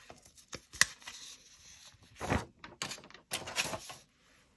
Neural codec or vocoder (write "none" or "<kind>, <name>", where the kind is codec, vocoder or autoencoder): none